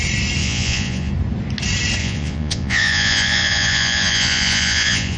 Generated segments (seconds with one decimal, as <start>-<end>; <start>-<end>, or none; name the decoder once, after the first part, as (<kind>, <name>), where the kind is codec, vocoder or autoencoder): 0.4-1.1 (vocoder, Vocos); 2.0-5.2